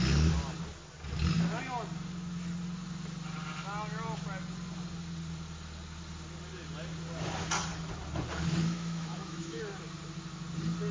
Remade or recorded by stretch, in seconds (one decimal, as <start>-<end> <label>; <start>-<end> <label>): 0.0-8.6 recorded; 8.6-9.6 remade; 9.6-10.9 recorded